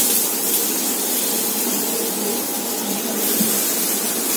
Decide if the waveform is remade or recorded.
recorded